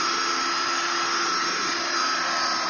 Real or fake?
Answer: real